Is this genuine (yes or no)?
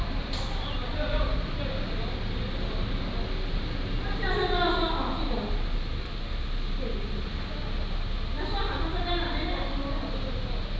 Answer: yes